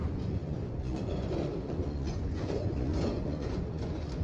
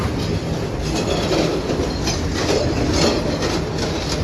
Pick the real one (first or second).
second